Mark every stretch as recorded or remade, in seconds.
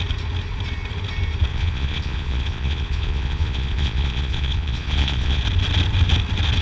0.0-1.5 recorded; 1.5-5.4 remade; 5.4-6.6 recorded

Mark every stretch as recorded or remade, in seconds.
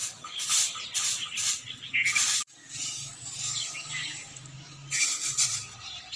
0.0-2.3 recorded; 2.3-4.8 remade; 4.8-6.2 recorded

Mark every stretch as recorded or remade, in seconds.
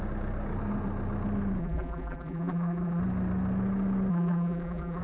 0.0-1.6 recorded; 1.6-3.0 remade; 3.0-4.1 recorded; 4.1-5.0 remade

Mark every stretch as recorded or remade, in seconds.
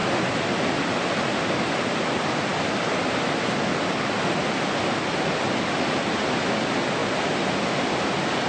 0.0-8.5 recorded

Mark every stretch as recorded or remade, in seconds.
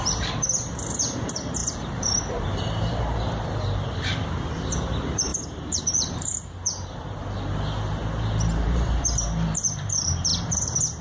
0.0-11.0 remade